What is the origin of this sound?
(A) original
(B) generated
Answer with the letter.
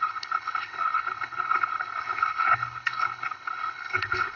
B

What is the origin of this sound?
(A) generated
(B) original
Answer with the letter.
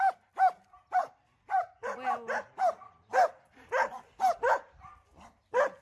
B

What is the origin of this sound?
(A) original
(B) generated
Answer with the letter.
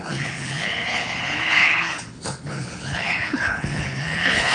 B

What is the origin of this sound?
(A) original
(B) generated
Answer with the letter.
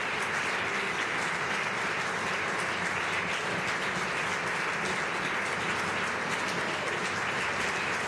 A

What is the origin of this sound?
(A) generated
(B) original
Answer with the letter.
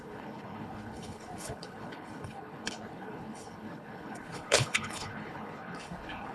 A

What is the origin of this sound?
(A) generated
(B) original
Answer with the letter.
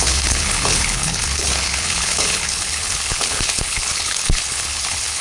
A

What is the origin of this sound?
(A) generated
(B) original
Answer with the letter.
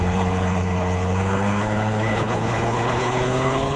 A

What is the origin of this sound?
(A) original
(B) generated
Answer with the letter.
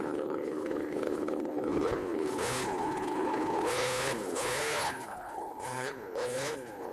B